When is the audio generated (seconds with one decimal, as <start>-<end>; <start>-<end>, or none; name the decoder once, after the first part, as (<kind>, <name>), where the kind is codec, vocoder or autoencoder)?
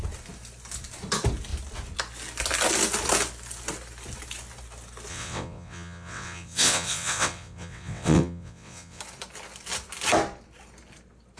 5.1-9.0 (vocoder, WaveNeXt)